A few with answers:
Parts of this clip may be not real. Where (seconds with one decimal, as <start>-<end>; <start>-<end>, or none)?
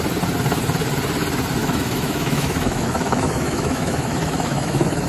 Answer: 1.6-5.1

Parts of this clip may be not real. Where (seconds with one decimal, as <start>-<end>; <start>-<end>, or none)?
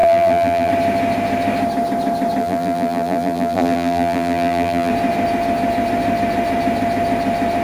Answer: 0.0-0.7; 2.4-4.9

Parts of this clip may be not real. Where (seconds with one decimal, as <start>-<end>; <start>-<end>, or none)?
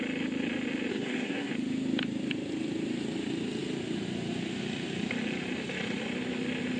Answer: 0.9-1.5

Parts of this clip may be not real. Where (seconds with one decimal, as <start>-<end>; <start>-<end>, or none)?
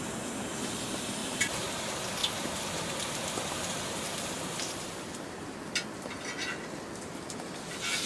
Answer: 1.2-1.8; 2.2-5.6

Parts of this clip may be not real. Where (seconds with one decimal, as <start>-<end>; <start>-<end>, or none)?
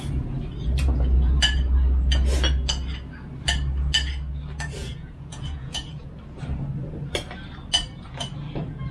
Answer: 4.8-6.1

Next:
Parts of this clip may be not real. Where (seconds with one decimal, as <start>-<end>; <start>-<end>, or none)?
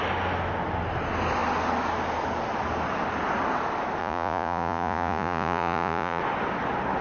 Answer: 4.0-6.2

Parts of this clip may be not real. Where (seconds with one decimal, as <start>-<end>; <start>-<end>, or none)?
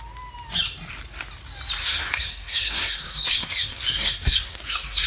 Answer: 1.8-5.1